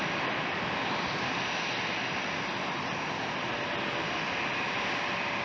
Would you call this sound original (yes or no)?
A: yes